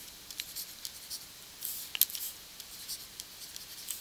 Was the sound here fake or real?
real